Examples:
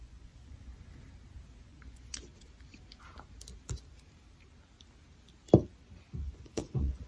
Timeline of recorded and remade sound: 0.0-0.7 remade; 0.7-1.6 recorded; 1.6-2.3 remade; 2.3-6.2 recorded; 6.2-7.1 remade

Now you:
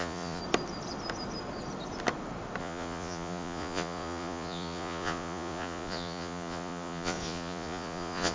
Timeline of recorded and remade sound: 0.0-0.4 remade; 0.4-2.6 recorded; 2.6-8.3 remade

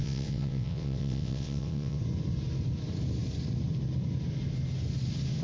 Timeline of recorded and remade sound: 0.0-2.0 remade; 2.0-5.4 recorded

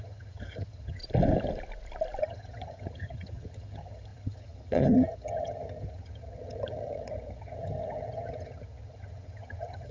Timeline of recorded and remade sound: 0.0-1.0 remade; 1.0-2.2 recorded; 2.2-9.9 remade

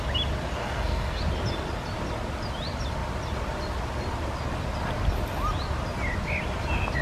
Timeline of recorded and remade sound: 0.0-0.6 recorded; 0.6-1.2 remade; 1.2-7.0 recorded